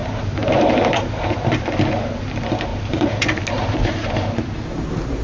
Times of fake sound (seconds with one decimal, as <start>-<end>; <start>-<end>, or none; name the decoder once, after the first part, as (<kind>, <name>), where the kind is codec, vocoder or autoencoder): 0.0-0.6 (vocoder, BigVGAN v2); 2.7-3.4

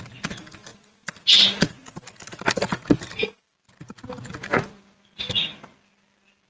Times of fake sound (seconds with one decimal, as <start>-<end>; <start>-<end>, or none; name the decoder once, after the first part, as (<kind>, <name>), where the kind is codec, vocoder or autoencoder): none

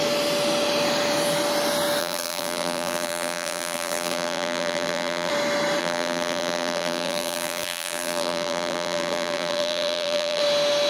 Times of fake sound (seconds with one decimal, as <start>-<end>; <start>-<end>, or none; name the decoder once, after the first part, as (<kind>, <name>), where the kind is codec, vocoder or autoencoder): 2.0-5.3 (vocoder, BigVGAN v2); 5.8-10.4

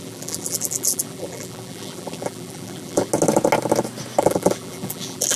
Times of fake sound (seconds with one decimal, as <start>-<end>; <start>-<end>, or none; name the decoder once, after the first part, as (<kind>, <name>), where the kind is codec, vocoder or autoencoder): 0.0-3.1 (vocoder, BigVGAN v2); 4.2-5.4